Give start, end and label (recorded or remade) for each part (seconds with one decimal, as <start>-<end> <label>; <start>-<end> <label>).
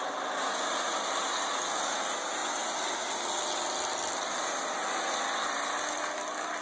0.0-6.6 recorded